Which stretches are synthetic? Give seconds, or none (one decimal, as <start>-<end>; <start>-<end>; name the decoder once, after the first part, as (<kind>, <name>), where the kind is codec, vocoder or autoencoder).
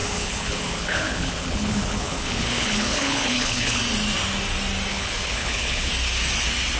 0.0-3.8 (codec, HILCodec); 4.9-5.9